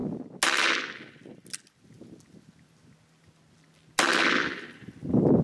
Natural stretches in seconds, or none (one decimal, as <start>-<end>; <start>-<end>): 0.0-5.4